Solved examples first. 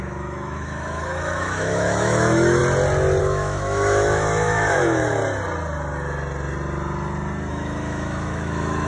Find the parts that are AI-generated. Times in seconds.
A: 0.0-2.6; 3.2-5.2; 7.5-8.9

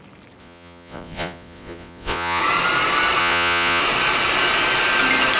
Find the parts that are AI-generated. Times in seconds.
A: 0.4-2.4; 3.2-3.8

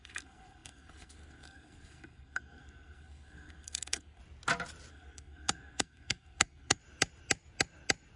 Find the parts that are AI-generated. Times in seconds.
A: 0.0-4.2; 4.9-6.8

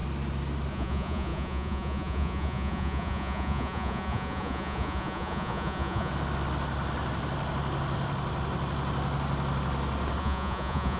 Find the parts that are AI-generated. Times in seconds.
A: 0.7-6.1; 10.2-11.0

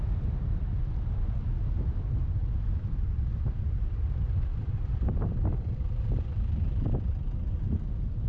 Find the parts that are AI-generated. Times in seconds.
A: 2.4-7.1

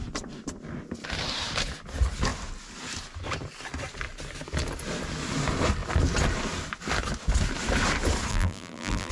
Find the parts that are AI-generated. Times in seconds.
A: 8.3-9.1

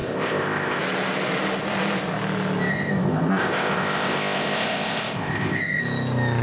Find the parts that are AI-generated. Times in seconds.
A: 0.0-0.8; 2.7-5.8

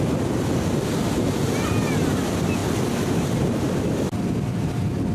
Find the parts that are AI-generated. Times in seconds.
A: none